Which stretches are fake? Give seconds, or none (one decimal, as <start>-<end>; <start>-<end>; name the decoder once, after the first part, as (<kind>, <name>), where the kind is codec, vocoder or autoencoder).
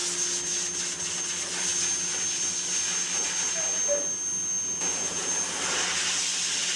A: none